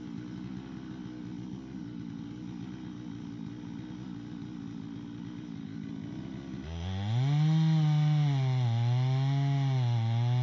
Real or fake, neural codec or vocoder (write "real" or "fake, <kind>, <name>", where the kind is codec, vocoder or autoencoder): real